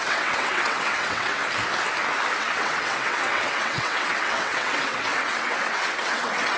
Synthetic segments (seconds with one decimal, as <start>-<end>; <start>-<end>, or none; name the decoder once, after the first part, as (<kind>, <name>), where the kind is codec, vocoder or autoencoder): 0.0-1.4 (vocoder, WaveNeXt); 2.4-6.6